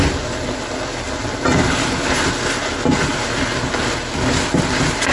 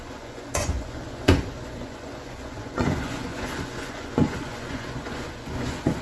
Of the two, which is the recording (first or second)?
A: first